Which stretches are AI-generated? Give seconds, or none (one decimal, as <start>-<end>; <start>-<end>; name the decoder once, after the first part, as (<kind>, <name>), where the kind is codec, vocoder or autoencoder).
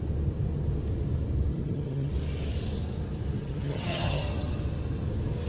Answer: 1.5-2.1 (vocoder, HiFi-GAN); 3.4-4.2